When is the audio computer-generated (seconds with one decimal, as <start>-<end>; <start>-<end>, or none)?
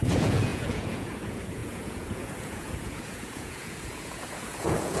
0.0-5.0